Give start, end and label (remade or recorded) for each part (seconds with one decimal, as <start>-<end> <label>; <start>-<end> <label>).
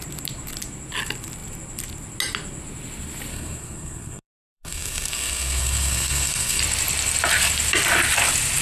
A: 0.0-3.3 recorded; 3.3-6.6 remade; 6.6-8.6 recorded